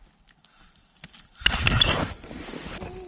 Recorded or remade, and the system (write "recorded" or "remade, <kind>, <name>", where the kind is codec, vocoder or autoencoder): remade, vocoder, BigVGAN v2